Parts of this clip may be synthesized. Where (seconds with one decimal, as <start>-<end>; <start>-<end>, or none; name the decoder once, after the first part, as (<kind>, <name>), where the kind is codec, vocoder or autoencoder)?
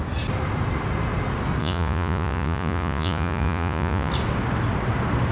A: 1.6-4.1 (vocoder, Vocos)